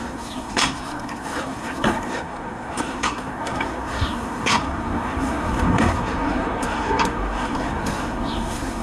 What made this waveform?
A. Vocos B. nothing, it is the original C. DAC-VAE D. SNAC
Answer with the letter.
D